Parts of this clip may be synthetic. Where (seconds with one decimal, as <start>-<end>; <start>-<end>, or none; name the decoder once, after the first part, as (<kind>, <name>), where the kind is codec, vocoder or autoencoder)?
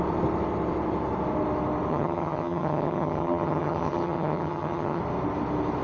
1.9-5.0 (vocoder, HiFi-GAN)